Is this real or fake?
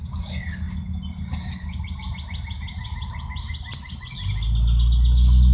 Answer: real